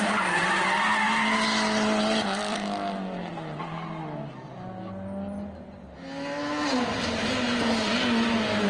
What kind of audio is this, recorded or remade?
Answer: recorded